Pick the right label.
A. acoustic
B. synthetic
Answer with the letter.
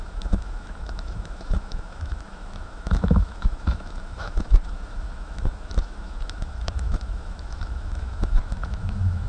B